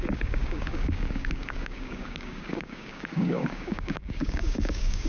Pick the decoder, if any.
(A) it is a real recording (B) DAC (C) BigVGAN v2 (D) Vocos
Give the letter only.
B